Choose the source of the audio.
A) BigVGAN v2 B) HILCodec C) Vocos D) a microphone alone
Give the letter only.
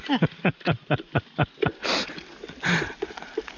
D